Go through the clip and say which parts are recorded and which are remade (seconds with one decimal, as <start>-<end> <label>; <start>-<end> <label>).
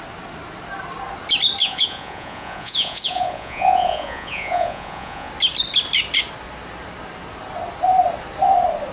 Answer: 0.0-1.6 recorded; 1.6-5.3 remade; 5.3-8.9 recorded